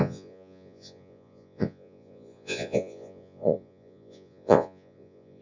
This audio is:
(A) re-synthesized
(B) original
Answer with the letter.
A